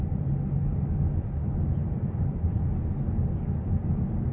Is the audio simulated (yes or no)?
no